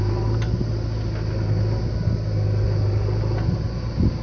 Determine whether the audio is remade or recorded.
recorded